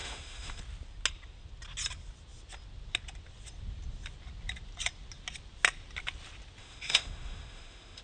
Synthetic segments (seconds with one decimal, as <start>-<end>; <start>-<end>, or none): 0.0-0.6; 6.6-8.0

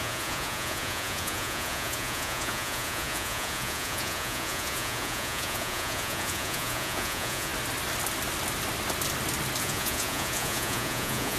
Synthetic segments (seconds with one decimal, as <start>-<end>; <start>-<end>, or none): 0.0-7.5; 9.6-11.4

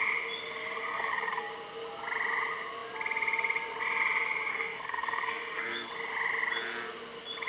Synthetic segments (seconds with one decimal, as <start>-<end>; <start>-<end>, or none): 0.8-1.5; 4.5-5.9

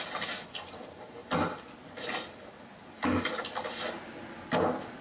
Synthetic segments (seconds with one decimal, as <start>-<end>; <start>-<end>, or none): none

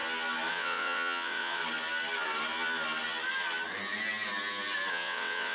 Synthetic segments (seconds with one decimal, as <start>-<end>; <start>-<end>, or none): 0.5-1.6; 4.9-5.5

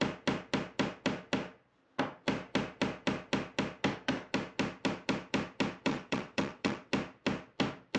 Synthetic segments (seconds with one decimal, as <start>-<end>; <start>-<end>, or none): 5.9-6.9